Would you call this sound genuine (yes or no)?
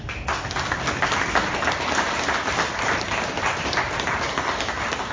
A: yes